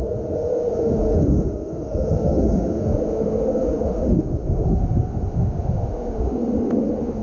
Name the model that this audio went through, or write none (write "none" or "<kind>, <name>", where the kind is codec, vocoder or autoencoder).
autoencoder, DAC-VAE